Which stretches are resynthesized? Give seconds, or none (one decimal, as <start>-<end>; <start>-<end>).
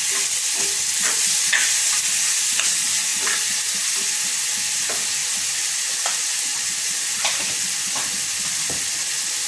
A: 3.1-3.8; 6.6-7.4